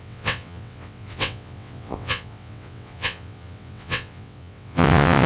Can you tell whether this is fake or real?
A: fake